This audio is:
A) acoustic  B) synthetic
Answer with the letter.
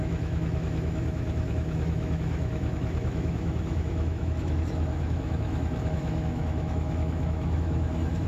B